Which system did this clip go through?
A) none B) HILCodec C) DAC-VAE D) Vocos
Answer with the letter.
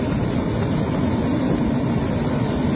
A